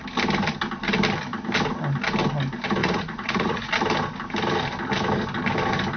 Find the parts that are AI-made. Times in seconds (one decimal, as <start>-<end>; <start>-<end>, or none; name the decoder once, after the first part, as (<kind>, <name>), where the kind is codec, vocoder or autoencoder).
2.8-3.7 (vocoder, Vocos)